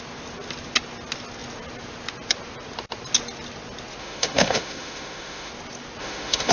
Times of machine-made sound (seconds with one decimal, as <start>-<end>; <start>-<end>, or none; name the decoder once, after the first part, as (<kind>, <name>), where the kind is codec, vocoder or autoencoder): 4.0-5.5 (autoencoder, DAC-VAE); 6.0-6.5